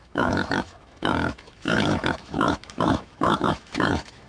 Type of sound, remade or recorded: remade